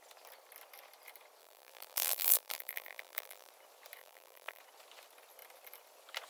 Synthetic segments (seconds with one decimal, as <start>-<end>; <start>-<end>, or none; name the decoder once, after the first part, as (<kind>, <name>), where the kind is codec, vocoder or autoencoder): 1.4-3.5 (vocoder, BigVGAN v2); 4.0-4.6